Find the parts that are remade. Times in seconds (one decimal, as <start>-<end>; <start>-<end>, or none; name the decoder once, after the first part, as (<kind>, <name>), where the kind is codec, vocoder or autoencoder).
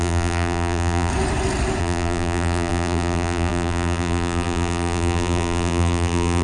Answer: 0.0-1.1 (vocoder, BigVGAN v2); 1.8-6.4